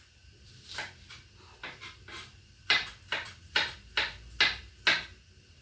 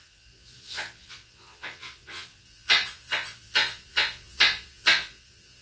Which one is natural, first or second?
first